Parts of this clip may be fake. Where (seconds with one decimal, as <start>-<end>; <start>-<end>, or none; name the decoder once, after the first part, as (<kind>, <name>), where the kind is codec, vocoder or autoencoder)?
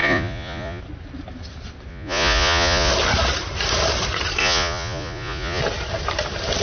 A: 0.0-0.8 (vocoder, Vocos); 1.9-2.9; 4.4-5.6